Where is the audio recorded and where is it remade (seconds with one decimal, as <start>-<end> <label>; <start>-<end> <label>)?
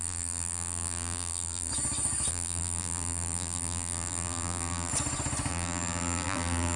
0.0-1.7 remade; 1.7-2.3 recorded; 2.3-4.9 remade; 4.9-5.5 recorded; 5.5-6.8 remade